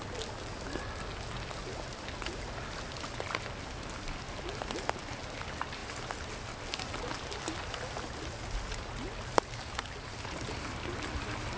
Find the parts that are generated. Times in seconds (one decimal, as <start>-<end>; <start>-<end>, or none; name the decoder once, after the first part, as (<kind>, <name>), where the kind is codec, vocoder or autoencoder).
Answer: none